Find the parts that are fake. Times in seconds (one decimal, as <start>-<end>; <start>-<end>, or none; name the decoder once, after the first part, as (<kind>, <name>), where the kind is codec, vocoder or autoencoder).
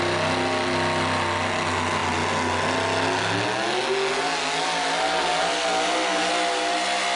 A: none